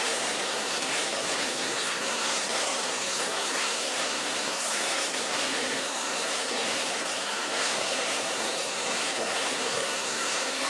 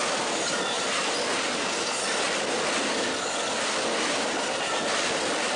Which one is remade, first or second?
first